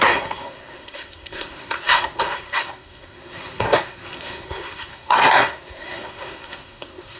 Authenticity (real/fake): fake